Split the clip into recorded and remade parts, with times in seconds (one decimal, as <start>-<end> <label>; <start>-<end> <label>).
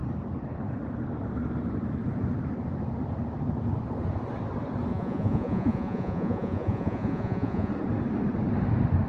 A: 0.0-4.9 recorded; 4.9-7.7 remade; 7.7-9.1 recorded